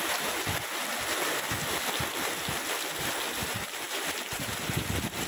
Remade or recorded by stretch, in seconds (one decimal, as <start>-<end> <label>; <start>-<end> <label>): 0.0-3.4 recorded; 3.4-4.5 remade; 4.5-5.3 recorded